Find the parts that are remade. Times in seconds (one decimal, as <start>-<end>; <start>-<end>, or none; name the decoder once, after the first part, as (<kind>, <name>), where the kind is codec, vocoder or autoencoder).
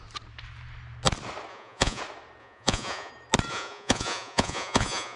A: 1.5-2.0 (vocoder, Vocos); 2.4-3.1; 3.5-5.2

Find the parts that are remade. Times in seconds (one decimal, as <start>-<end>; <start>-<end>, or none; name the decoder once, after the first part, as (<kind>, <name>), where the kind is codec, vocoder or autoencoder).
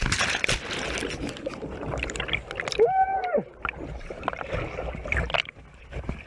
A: none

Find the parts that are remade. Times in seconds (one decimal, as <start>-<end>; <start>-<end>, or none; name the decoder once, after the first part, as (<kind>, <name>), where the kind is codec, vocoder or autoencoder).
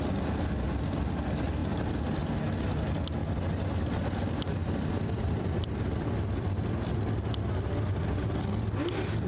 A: 1.6-2.2 (vocoder, BigVGAN v2); 4.6-6.5